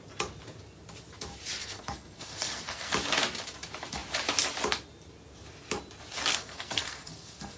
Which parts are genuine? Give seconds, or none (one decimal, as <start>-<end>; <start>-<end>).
0.0-1.6; 2.9-6.3